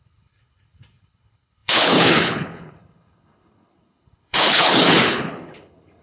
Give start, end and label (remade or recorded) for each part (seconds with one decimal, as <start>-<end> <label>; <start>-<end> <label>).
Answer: 0.0-6.0 remade